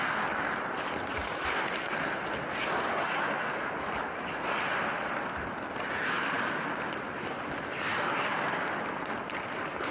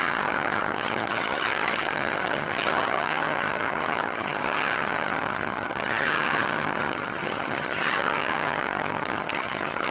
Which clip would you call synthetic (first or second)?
second